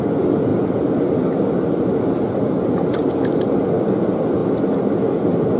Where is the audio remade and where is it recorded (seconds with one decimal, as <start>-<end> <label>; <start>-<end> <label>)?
0.0-5.6 recorded